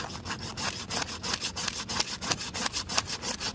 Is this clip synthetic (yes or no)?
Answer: no